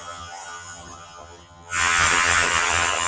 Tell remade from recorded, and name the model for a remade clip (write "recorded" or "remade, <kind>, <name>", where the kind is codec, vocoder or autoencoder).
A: remade, vocoder, HiFi-GAN